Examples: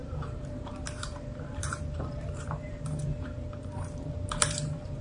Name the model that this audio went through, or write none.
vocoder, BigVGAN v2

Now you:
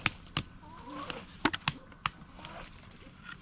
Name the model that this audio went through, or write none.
none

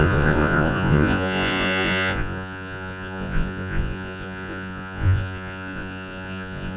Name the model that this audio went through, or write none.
vocoder, Vocos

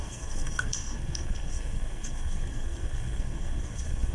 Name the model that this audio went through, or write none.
codec, SNAC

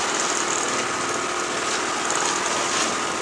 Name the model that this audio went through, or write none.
none